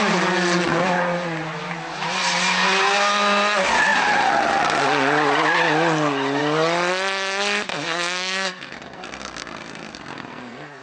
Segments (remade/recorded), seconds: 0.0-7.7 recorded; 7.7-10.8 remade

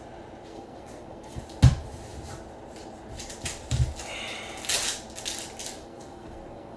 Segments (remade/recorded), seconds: 0.0-0.5 recorded; 0.5-1.4 remade; 1.4-5.8 recorded; 5.8-6.8 remade